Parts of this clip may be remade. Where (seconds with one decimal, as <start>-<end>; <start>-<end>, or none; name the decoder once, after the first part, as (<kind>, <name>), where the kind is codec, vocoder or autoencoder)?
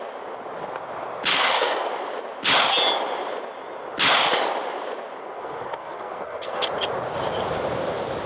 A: 1.3-1.9 (codec, SNAC); 5.2-6.7